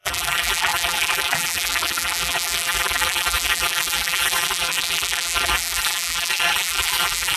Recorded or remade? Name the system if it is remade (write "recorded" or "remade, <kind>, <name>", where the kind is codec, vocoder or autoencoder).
remade, vocoder, BigVGAN v2